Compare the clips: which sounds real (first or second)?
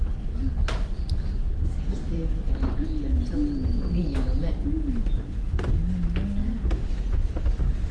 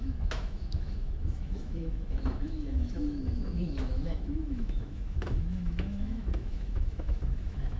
first